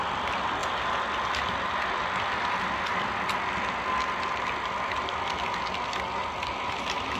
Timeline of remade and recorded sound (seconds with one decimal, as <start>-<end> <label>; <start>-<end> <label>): 0.0-7.2 recorded